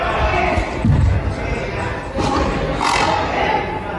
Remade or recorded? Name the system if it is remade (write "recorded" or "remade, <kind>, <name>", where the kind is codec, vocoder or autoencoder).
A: recorded